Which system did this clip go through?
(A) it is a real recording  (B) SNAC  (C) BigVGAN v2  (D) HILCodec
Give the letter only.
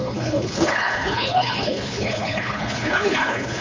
D